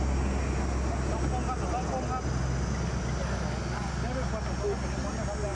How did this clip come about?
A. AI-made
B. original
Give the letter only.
B